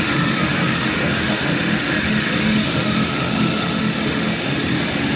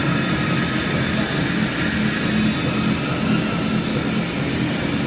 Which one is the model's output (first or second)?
first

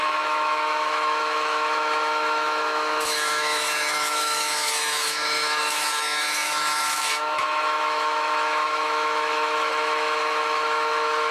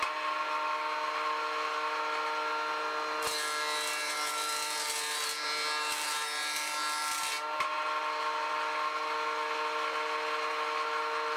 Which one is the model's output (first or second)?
first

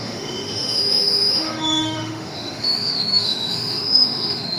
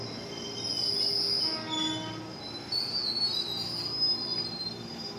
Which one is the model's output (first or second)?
first